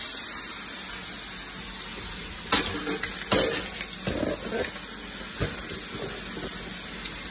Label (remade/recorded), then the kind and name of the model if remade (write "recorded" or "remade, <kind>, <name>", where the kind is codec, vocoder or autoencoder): recorded